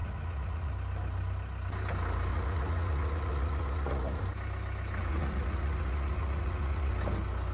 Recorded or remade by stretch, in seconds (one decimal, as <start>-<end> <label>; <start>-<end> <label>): 0.0-0.7 remade; 0.7-2.3 recorded; 2.3-4.2 remade; 4.2-5.1 recorded; 5.1-6.9 remade; 6.9-7.5 recorded